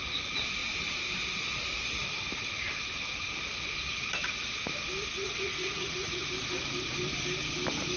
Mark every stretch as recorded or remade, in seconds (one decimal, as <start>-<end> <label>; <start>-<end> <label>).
0.0-5.2 recorded; 5.2-6.3 remade; 6.3-8.0 recorded